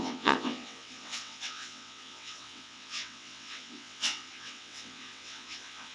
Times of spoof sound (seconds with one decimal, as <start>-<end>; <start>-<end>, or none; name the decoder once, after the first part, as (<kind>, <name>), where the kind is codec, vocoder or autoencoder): 0.0-5.9 (vocoder, WaveNeXt)